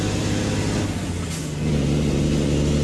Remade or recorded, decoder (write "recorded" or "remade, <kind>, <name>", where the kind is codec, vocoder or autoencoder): recorded